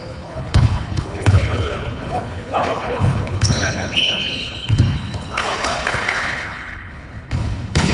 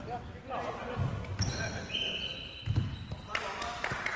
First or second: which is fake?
first